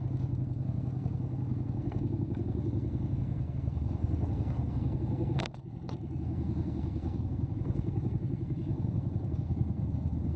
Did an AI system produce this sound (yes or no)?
yes